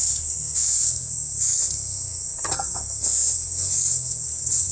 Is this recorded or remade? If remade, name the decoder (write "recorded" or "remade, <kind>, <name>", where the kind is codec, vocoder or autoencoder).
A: remade, codec, SNAC